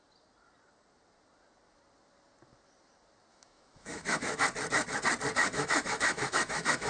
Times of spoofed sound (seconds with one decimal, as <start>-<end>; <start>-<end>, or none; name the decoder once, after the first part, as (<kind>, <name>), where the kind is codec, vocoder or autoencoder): 3.3-4.4 (autoencoder, DAC-VAE); 5.4-6.9